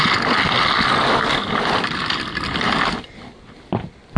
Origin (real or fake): real